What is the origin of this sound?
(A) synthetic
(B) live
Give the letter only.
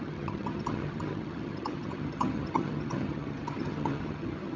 A